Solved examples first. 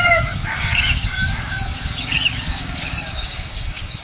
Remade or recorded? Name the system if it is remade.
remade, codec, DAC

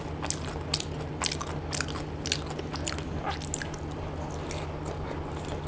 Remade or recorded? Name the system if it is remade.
recorded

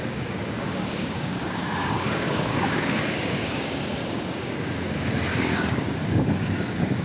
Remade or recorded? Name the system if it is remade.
remade, codec, DAC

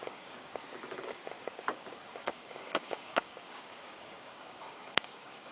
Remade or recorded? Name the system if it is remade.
remade, codec, DAC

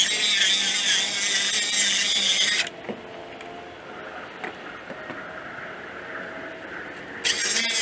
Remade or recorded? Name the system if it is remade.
recorded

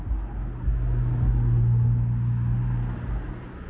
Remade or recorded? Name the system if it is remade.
recorded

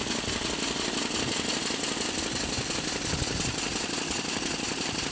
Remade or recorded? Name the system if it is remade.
recorded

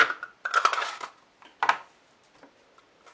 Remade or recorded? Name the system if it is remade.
recorded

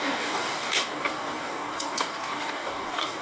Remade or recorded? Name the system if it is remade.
remade, codec, DAC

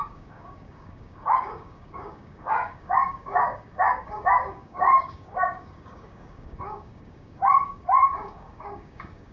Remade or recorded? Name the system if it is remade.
remade, codec, DAC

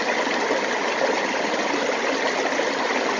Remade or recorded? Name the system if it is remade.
recorded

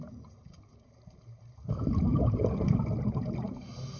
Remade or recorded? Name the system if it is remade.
recorded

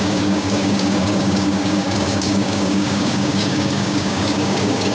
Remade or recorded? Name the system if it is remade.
remade, codec, DAC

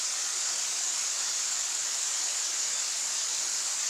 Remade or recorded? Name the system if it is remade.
remade, codec, DAC